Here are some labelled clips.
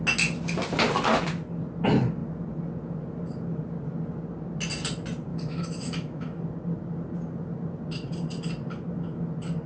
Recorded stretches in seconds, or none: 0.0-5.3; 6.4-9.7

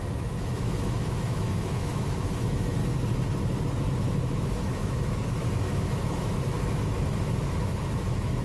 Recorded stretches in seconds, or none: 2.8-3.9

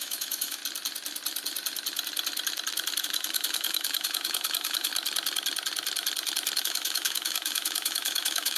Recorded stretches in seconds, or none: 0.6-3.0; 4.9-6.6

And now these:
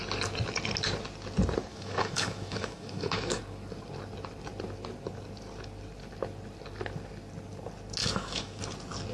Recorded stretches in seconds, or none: 0.0-1.7; 3.4-8.0; 8.6-9.1

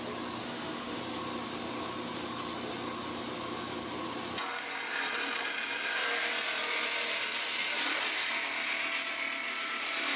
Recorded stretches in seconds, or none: 0.0-0.4; 1.0-10.2

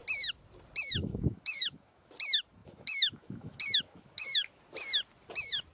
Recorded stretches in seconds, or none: 0.0-1.0; 2.1-2.6; 4.6-5.7